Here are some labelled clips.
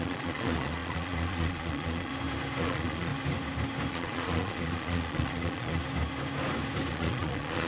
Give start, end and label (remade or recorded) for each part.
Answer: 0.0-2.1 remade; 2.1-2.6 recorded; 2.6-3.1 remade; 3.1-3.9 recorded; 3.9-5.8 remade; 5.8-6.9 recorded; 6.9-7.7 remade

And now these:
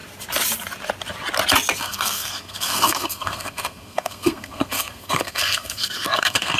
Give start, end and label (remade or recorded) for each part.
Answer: 0.0-1.8 recorded; 1.8-6.6 remade